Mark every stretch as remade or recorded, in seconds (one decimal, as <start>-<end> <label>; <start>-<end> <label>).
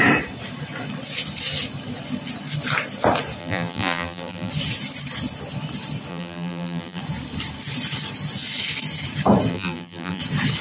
0.0-3.4 recorded; 3.4-4.5 remade; 4.5-6.1 recorded; 6.1-7.0 remade; 7.0-9.5 recorded; 9.5-10.2 remade; 10.2-10.6 recorded